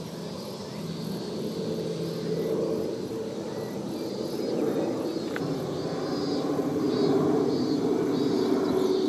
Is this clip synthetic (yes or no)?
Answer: no